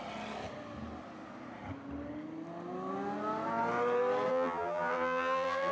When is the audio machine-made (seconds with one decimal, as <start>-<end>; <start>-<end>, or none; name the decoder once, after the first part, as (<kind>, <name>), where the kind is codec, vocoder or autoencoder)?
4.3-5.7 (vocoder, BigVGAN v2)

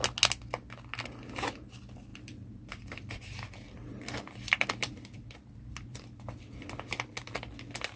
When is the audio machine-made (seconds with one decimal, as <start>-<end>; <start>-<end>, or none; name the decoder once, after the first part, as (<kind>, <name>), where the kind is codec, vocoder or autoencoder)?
2.1-6.4 (vocoder, BigVGAN v2)

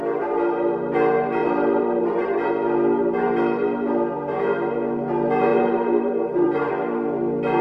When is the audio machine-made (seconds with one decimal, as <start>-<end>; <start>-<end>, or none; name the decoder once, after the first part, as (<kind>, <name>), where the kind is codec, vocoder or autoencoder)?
1.4-2.5 (vocoder, BigVGAN v2); 5.5-6.7